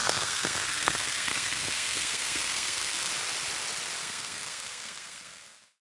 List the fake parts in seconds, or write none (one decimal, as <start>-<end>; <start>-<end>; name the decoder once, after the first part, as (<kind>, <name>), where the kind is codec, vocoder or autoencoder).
0.0-3.1 (codec, SNAC); 4.0-5.8